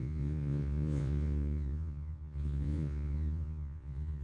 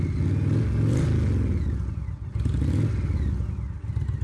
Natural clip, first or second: second